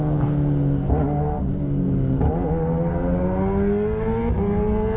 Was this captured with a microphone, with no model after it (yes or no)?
yes